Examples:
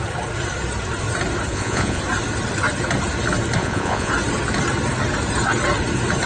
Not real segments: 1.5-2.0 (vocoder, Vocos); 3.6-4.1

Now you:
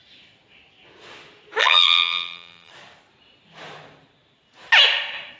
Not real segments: 1.6-2.7 (vocoder, BigVGAN v2)

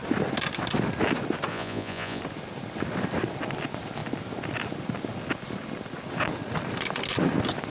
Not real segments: 1.5-2.2 (vocoder, Vocos)

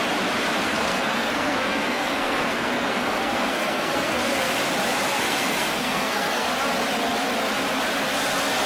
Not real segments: 0.6-4.5 (codec, SNAC); 5.1-6.5

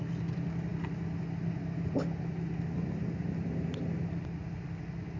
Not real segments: none

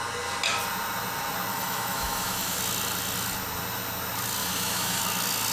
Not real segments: 1.5-2.6 (autoencoder, DAC-VAE); 4.4-5.0

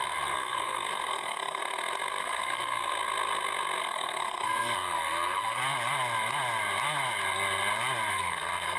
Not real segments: 0.0-1.6 (codec, SNAC); 2.2-2.9; 3.8-5.6; 8.1-8.8

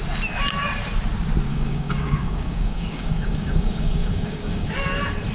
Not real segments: 1.5-4.7 (codec, DAC)